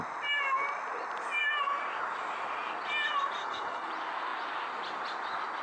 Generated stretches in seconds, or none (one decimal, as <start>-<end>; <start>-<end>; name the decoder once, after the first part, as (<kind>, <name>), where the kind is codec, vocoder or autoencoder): 3.4-3.9 (codec, HILCodec)